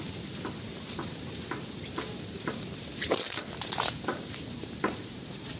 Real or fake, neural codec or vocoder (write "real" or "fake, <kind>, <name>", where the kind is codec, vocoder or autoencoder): fake, vocoder, BigVGAN v2